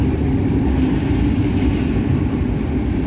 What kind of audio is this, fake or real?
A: real